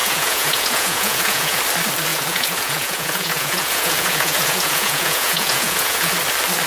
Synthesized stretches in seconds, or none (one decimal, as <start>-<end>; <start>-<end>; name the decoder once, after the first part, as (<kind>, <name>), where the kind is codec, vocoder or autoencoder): 0.0-1.6 (vocoder, Vocos); 2.1-6.1

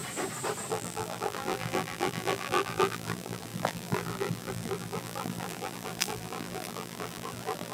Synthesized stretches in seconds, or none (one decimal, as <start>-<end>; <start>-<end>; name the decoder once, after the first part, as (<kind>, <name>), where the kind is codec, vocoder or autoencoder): 0.7-7.7 (vocoder, BigVGAN v2)

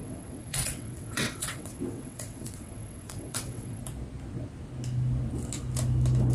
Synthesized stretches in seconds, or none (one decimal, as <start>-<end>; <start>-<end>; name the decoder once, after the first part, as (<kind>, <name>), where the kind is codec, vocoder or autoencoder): 0.0-3.8 (vocoder, WaveNeXt)

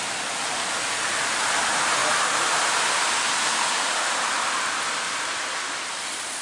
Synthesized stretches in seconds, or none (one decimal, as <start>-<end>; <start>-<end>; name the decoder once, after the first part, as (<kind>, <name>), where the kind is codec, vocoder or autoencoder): 0.0-2.0 (vocoder, BigVGAN v2); 5.7-6.4